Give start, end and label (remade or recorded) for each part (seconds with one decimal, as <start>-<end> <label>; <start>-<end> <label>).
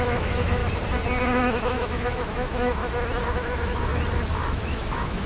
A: 0.0-0.6 remade; 0.6-1.2 recorded; 1.2-2.8 remade; 2.8-3.3 recorded; 3.3-3.9 remade; 3.9-4.5 recorded; 4.5-5.3 remade